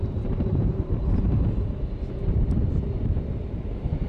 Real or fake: fake